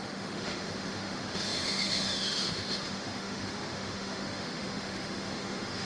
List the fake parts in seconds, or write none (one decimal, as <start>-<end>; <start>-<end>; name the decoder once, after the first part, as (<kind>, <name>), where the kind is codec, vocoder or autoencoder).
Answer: 0.0-5.8 (autoencoder, DAC-VAE)